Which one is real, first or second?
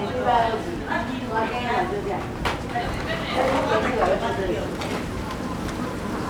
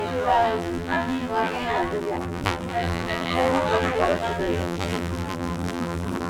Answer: first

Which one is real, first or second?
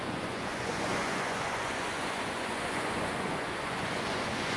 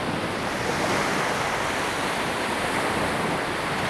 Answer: second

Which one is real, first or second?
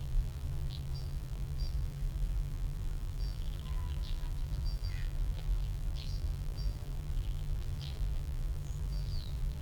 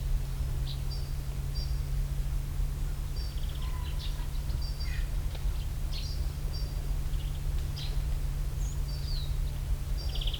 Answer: second